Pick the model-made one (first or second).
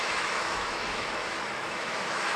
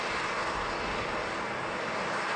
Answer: first